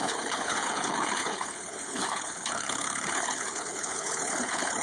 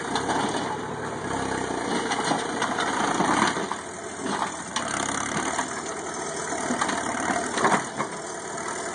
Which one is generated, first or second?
first